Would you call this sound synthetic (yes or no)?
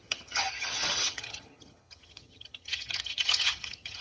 yes